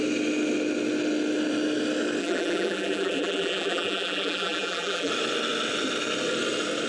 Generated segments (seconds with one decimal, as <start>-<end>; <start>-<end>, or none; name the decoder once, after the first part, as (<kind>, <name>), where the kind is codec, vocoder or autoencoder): 2.2-5.1 (vocoder, BigVGAN v2)

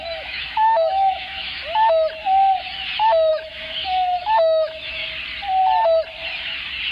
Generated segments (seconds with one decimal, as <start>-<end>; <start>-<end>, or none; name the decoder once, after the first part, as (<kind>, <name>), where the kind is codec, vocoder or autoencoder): 0.0-1.6 (autoencoder, DAC-VAE); 3.3-5.0

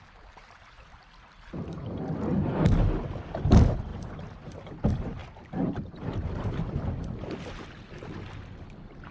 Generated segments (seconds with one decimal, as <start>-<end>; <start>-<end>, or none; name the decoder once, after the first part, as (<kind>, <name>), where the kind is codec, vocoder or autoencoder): none

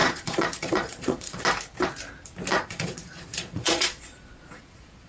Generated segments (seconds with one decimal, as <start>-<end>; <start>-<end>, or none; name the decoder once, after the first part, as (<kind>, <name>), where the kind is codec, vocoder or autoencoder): 0.0-1.4 (vocoder, Vocos); 2.5-5.1

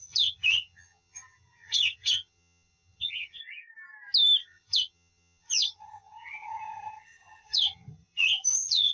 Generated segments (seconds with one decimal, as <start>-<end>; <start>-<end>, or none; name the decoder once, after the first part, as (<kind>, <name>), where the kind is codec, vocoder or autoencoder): 0.0-3.4 (vocoder, HiFi-GAN); 4.4-8.9

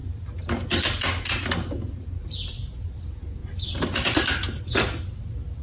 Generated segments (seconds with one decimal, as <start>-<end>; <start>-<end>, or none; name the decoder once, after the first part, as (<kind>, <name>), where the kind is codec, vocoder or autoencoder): 2.2-2.9 (vocoder, BigVGAN v2)

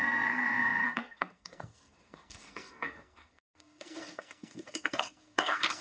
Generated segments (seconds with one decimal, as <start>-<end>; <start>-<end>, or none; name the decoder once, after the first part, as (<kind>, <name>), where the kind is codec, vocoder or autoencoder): 0.0-5.8 (codec, SNAC)